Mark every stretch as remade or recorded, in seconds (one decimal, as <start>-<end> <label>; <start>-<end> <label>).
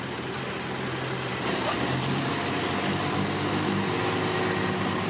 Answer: 0.0-1.3 recorded; 1.3-2.3 remade; 2.3-5.1 recorded